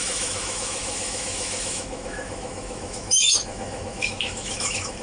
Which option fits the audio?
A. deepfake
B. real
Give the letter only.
A